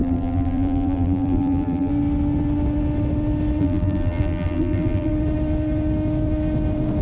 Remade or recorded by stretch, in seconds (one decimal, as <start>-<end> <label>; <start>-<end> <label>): 0.0-1.9 remade; 1.9-3.6 recorded; 3.6-5.1 remade; 5.1-7.0 recorded